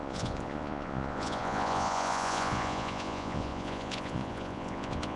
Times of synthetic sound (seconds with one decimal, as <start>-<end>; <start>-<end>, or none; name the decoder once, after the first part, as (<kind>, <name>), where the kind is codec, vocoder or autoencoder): 0.0-5.2 (vocoder, Vocos)